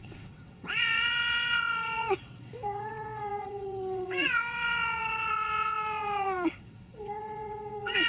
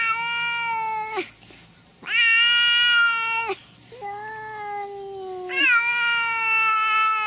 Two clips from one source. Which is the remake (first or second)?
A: first